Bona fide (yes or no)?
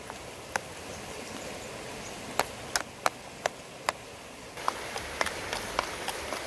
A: yes